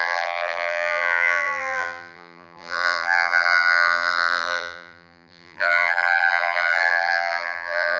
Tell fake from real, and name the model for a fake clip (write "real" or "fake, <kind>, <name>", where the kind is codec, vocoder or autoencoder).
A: fake, vocoder, BigVGAN v2